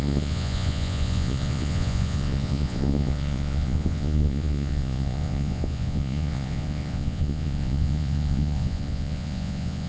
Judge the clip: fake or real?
fake